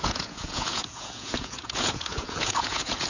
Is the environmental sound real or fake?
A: fake